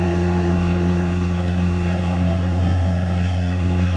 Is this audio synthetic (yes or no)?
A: yes